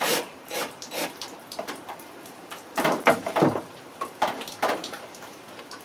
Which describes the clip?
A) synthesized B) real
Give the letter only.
A